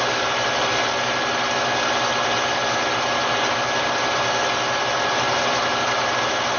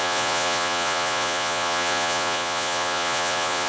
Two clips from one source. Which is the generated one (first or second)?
second